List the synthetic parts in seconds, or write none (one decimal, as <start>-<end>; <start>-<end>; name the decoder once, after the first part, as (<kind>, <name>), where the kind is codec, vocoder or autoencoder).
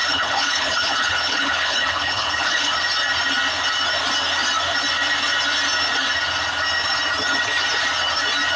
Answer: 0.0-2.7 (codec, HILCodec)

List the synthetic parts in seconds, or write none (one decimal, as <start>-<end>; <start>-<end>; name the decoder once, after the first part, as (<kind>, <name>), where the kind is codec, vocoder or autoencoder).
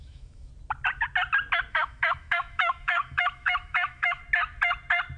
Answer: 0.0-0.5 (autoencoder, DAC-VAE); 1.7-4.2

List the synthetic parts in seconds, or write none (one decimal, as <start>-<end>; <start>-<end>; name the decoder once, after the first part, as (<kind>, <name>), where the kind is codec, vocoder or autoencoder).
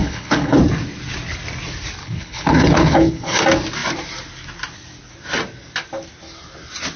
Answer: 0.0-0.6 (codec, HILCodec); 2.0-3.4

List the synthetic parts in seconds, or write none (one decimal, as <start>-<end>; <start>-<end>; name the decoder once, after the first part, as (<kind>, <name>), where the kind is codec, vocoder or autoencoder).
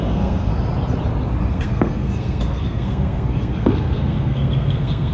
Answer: 0.0-0.5 (codec, SNAC); 1.5-5.1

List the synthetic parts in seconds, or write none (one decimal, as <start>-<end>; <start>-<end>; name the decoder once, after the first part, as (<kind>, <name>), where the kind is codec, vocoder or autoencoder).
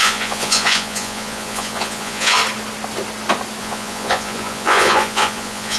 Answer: 0.0-2.4 (vocoder, Vocos); 3.6-5.8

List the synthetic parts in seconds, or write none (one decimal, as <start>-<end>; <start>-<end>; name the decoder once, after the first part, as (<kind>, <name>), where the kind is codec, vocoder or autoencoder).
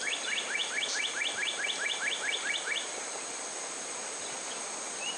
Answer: none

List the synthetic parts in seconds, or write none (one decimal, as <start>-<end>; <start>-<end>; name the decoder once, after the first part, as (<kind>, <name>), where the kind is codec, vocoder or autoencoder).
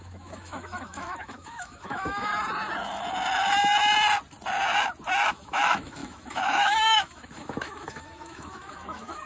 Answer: 0.0-2.3 (autoencoder, DAC-VAE); 5.3-9.3